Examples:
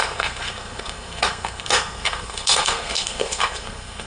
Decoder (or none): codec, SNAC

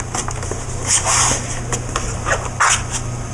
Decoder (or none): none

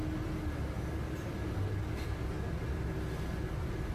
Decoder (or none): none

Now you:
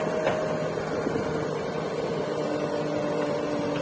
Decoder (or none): none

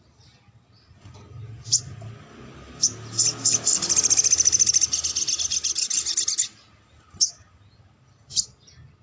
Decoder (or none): none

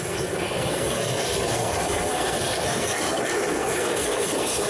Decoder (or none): codec, SNAC